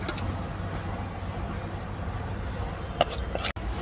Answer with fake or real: real